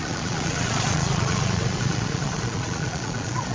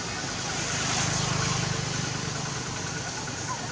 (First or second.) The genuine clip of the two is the second